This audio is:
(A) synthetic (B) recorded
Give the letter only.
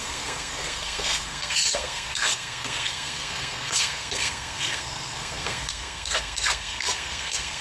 A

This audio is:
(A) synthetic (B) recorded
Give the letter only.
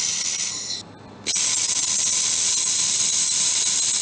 B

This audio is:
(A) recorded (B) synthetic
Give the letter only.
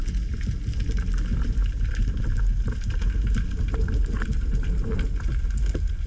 A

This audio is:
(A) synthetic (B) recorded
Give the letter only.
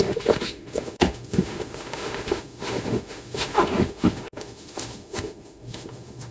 A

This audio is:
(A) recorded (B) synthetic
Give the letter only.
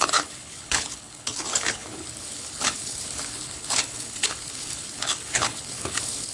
B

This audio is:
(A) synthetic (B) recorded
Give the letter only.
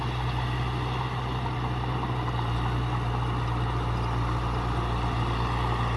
B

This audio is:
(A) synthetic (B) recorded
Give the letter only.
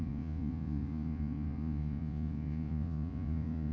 A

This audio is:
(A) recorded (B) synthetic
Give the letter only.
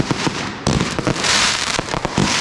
B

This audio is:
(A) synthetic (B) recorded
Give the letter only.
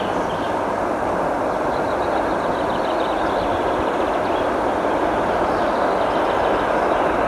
B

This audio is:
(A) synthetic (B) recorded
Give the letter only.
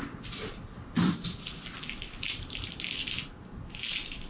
B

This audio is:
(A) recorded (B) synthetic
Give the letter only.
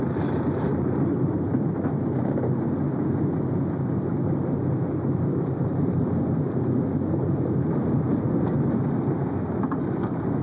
A